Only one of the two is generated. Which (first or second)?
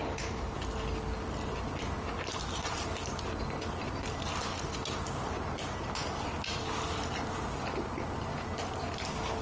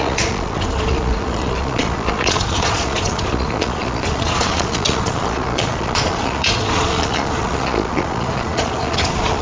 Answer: second